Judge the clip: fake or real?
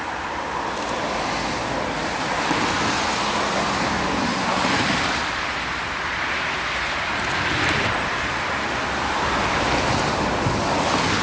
fake